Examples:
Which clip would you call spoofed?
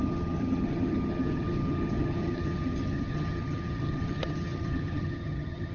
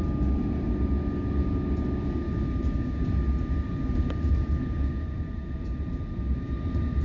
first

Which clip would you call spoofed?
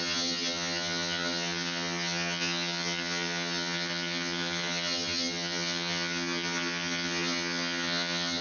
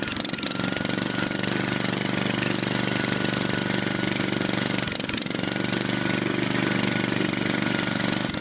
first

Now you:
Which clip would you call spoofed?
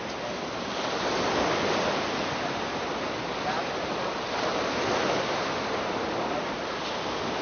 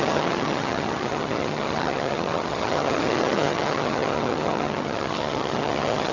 second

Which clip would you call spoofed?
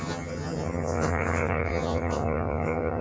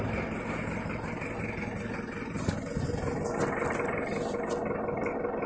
first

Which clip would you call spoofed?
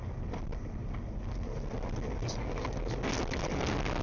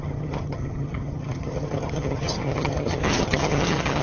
second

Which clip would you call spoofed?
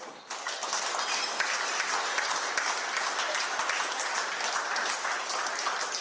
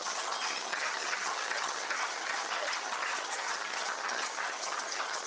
second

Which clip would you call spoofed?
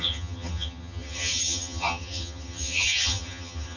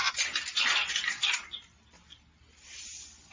first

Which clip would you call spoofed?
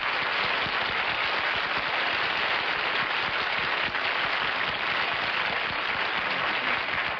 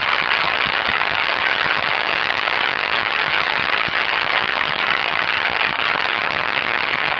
second